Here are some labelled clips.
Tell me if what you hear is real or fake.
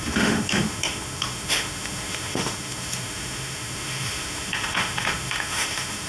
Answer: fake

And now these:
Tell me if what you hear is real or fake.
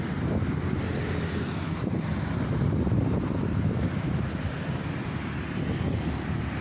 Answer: real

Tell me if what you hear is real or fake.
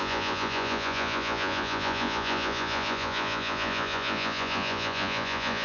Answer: fake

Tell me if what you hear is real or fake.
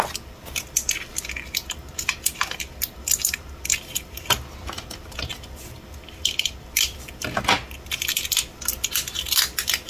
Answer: real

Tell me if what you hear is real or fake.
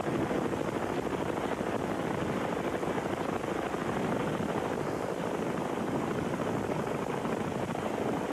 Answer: real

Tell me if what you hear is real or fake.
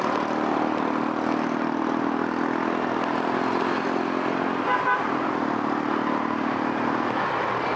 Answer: real